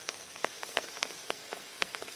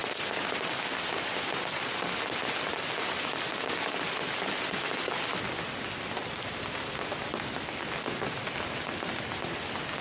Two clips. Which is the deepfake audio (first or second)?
first